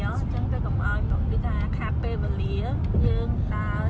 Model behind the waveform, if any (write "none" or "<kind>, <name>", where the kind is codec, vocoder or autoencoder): none